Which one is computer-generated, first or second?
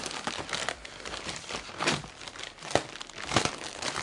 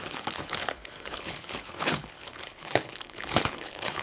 second